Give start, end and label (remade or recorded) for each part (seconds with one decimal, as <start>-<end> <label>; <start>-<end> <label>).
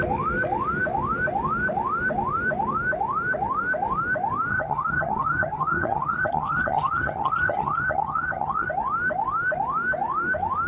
0.0-4.5 recorded; 4.5-8.7 remade; 8.7-10.7 recorded